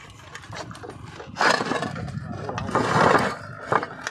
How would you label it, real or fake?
real